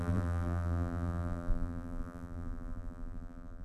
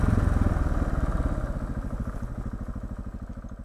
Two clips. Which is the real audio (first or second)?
second